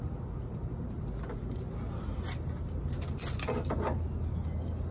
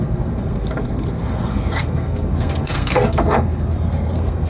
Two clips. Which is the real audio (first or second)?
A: first